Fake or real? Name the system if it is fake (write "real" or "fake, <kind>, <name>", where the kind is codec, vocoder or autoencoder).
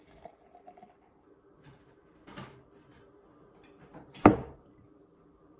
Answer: real